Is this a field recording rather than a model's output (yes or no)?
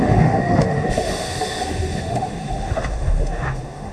no